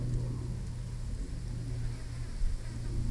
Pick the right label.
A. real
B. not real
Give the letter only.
A